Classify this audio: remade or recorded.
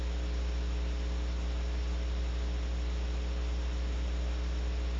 recorded